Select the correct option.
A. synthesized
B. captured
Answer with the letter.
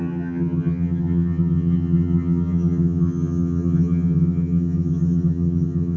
A